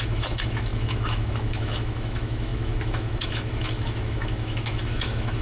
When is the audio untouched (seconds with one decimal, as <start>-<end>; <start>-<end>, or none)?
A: none